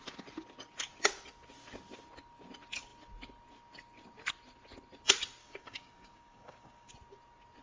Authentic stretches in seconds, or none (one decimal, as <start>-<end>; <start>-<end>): 0.0-5.4; 6.9-7.6